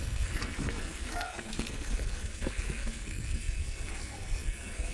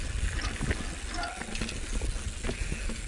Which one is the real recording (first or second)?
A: second